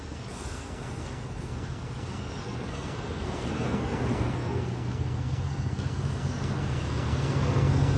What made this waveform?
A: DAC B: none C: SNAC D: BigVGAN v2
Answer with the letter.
C